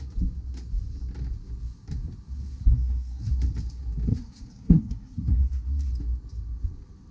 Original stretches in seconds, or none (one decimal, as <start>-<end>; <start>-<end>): 0.0-2.6; 3.3-4.1; 5.9-7.1